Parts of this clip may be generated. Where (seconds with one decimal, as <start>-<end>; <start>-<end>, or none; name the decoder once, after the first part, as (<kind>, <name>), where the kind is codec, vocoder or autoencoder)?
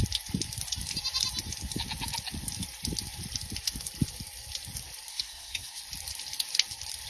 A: 5.1-5.8 (codec, SNAC)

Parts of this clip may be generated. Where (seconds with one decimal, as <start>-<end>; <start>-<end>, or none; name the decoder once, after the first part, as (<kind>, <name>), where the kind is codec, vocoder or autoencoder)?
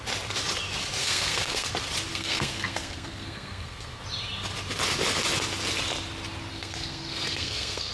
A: 1.0-1.7 (codec, SNAC); 2.1-4.0; 6.5-7.9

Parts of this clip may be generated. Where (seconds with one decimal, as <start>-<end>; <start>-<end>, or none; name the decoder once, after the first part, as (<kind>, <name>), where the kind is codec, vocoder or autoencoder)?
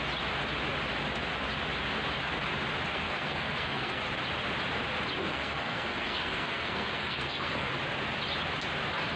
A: 2.9-4.0 (codec, SNAC); 5.2-7.7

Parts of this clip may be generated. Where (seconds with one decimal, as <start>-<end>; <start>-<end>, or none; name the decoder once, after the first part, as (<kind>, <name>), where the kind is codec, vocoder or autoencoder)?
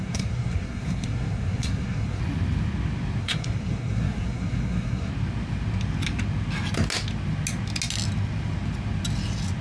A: 0.0-2.2 (codec, SNAC); 3.2-5.1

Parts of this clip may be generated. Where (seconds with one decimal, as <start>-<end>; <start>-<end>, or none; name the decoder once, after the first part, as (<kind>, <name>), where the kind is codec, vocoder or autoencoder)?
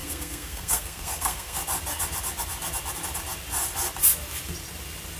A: 0.0-1.6 (codec, SNAC)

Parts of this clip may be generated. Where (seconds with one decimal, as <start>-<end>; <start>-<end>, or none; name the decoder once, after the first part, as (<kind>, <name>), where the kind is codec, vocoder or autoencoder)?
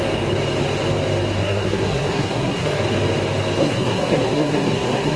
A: 1.4-2.8 (codec, SNAC); 3.6-5.2